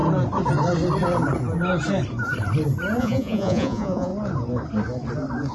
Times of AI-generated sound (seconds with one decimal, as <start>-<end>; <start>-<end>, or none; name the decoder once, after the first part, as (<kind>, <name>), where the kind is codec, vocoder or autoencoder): 3.0-4.1 (vocoder, Vocos)